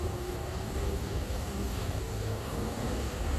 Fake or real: fake